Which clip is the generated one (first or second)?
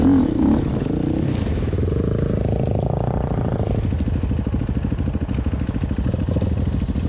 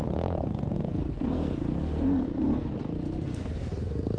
second